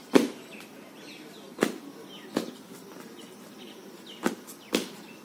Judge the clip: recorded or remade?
recorded